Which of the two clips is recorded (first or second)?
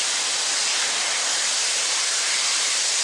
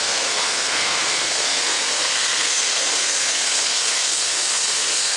first